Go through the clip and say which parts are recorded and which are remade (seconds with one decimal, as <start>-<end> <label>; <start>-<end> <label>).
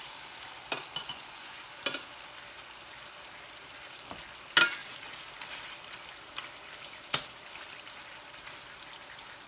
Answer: 0.0-1.0 recorded; 1.0-1.7 remade; 1.7-9.5 recorded